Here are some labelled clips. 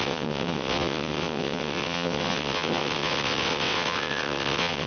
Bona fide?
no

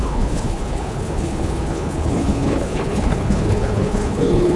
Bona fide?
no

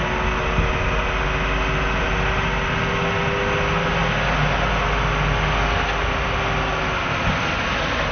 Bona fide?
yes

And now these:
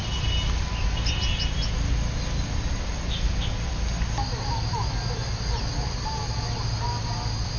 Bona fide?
yes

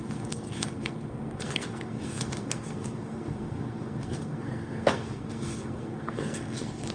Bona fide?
no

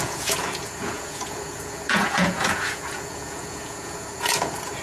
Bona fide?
no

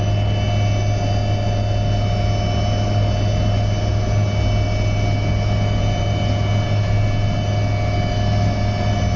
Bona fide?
yes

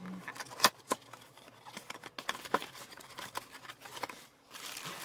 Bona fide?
yes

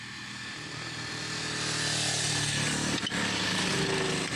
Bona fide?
yes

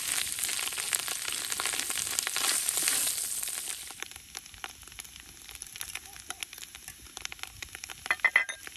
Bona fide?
yes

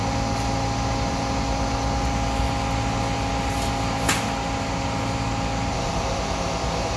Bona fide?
yes